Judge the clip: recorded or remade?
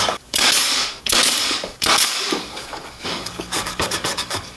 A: remade